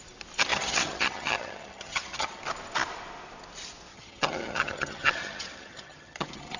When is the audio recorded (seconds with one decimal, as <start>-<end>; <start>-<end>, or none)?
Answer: 0.0-0.5; 2.4-3.9